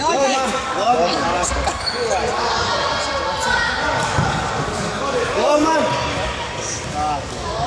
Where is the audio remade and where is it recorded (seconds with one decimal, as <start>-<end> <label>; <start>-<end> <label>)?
0.0-2.9 remade; 2.9-3.8 recorded; 3.8-7.7 remade